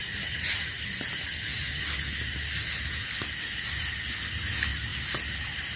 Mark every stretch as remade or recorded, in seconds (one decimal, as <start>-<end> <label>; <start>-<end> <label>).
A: 0.0-5.8 recorded